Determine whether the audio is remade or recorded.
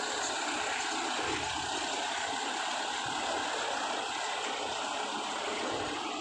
recorded